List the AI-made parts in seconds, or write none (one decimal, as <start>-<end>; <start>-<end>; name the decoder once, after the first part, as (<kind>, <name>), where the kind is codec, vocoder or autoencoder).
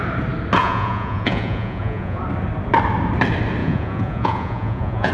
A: 0.6-2.2 (vocoder, Vocos); 3.6-5.1